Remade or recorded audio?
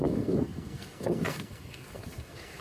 remade